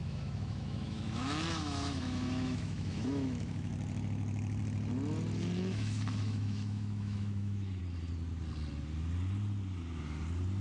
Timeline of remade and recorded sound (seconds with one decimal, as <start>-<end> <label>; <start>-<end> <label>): 0.0-3.7 remade; 3.7-5.6 recorded; 5.6-7.8 remade; 7.8-10.6 recorded